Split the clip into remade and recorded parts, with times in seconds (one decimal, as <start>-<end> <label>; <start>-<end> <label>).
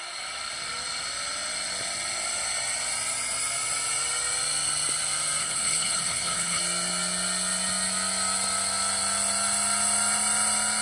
0.0-5.4 recorded; 5.4-6.6 remade; 6.6-10.8 recorded